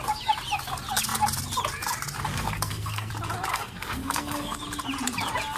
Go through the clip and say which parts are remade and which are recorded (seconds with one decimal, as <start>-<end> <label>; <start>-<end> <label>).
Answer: 0.0-2.3 recorded; 2.3-3.1 remade; 3.1-3.5 recorded; 3.5-4.6 remade; 4.6-5.6 recorded